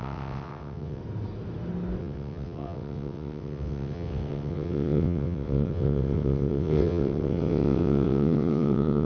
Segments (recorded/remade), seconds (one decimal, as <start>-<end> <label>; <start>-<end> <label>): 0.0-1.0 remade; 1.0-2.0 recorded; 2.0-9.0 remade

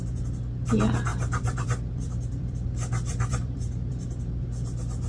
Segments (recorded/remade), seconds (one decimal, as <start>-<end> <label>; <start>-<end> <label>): 0.0-1.1 recorded; 1.1-4.2 remade; 4.2-5.1 recorded

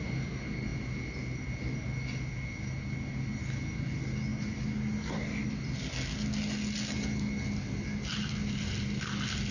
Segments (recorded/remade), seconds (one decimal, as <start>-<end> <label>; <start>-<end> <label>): 0.0-9.5 recorded

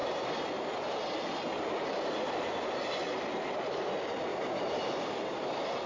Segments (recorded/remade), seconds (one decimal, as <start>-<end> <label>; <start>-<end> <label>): 0.0-5.9 recorded

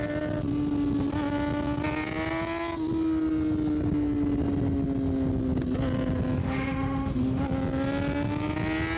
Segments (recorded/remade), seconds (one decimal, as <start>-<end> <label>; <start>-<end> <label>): 0.0-6.4 recorded; 6.4-7.4 remade; 7.4-9.0 recorded

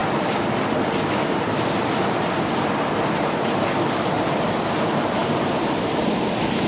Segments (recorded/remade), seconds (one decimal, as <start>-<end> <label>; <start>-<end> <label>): 0.0-4.0 remade; 4.0-5.2 recorded; 5.2-6.7 remade

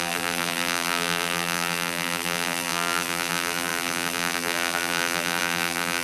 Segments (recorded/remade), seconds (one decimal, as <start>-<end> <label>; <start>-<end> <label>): 0.0-6.0 remade